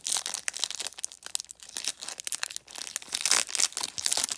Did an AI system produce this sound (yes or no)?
no